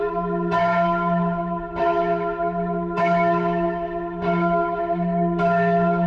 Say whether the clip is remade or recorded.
remade